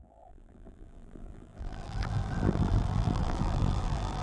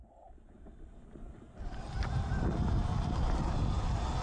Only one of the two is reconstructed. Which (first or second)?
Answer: first